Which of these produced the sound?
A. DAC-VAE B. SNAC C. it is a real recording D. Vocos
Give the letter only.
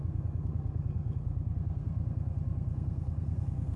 B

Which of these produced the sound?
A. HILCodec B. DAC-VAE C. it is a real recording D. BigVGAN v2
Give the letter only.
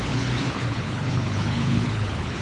A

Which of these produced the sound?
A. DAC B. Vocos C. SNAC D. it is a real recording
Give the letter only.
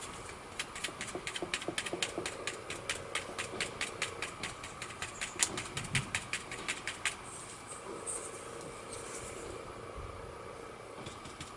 D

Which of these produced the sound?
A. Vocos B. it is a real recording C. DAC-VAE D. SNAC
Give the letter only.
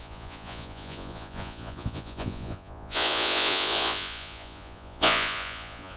A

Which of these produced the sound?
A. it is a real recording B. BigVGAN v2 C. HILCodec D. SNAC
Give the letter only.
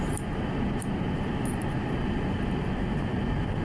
A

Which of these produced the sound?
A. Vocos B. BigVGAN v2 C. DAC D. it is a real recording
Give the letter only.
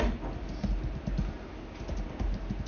D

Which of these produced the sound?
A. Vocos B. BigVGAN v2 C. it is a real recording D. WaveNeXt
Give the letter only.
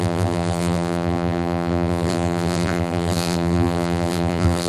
B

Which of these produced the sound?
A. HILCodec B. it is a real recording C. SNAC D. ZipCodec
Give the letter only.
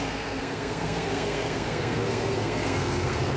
C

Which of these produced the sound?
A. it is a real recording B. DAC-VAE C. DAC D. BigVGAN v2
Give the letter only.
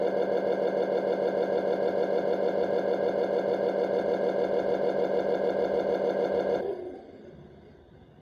A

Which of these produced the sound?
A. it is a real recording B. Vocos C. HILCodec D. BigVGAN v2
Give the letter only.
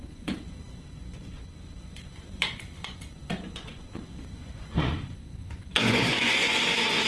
B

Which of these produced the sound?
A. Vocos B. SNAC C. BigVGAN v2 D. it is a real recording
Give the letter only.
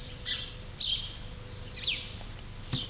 C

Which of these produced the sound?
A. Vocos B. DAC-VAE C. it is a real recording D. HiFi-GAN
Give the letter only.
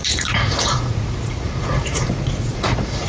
A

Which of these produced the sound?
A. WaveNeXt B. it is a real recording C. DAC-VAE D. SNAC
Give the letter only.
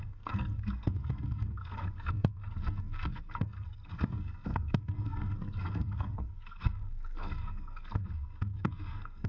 D